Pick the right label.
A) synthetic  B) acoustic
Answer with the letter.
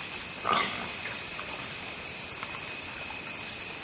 B